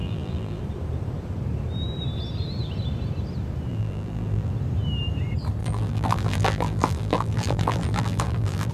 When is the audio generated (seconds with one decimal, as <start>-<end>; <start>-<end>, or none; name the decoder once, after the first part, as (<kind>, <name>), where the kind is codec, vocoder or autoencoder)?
0.0-0.6 (vocoder, BigVGAN v2); 3.7-4.5; 5.6-8.7